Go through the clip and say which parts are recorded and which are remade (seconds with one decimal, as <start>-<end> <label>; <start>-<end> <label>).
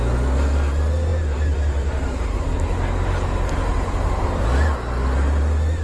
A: 0.0-5.8 recorded